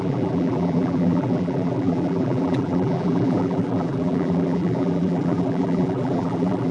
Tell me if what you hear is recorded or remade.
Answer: remade